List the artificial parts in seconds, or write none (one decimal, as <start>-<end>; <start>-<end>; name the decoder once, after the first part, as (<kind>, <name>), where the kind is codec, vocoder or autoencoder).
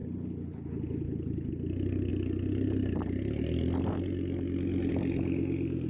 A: 0.0-1.5 (codec, HILCodec)